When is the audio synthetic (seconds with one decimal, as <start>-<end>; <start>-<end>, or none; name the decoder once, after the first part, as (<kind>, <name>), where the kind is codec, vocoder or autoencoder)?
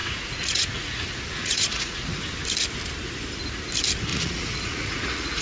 0.0-1.0 (vocoder, Vocos); 1.4-2.2; 4.1-5.4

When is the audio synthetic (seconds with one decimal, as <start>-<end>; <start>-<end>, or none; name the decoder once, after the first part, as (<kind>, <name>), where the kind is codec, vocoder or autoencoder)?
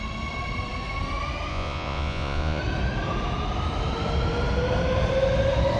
1.5-2.6 (vocoder, Vocos)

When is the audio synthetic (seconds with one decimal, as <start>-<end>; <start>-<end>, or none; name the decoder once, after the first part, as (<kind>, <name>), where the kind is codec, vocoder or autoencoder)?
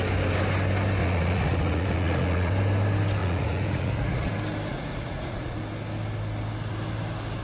1.0-2.5 (vocoder, Vocos); 3.2-4.3; 4.7-5.6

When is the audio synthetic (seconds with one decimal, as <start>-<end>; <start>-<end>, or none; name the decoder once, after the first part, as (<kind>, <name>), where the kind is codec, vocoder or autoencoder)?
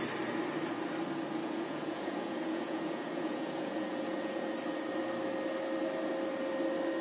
1.4-4.5 (vocoder, Vocos)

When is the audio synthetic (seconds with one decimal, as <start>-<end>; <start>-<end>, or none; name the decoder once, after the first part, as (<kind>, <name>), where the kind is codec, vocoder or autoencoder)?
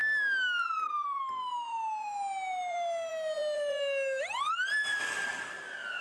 none